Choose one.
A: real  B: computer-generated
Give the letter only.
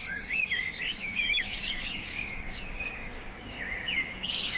B